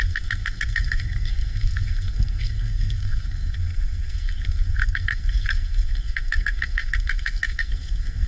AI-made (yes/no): yes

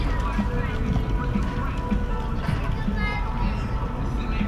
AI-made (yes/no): no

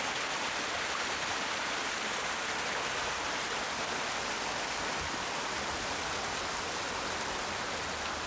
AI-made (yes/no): no